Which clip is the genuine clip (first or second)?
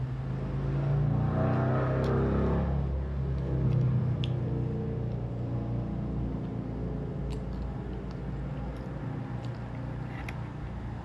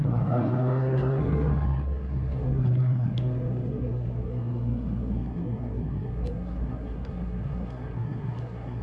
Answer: first